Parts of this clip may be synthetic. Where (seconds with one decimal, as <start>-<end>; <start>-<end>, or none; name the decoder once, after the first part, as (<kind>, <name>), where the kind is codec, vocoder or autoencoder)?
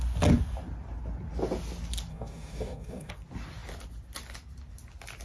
2.1-3.1 (codec, DAC)